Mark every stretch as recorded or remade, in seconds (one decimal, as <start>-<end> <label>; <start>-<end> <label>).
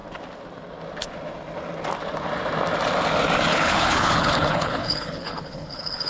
0.0-3.5 recorded; 3.5-6.1 remade